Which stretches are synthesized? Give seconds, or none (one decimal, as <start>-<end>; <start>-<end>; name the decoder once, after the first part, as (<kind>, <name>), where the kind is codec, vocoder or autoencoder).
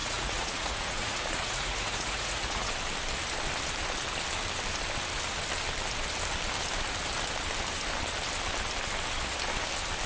0.0-2.7 (vocoder, Vocos)